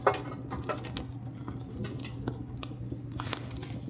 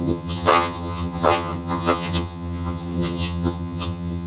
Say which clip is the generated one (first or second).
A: second